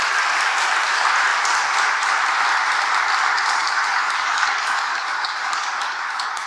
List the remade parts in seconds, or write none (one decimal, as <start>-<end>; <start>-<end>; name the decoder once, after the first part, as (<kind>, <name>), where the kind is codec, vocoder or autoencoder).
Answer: 3.6-6.5 (codec, DAC)